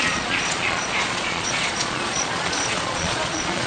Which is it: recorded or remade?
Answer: remade